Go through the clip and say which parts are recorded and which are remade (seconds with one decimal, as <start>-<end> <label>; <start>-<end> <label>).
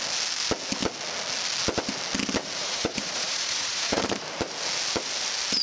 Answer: 0.0-2.6 recorded; 2.6-4.0 remade; 4.0-5.6 recorded